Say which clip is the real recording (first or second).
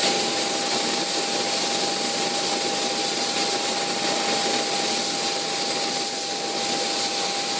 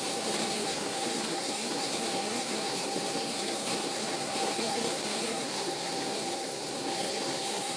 first